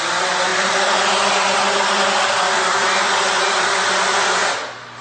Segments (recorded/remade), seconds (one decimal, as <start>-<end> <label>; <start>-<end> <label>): 0.0-5.0 recorded